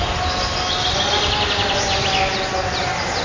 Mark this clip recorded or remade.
recorded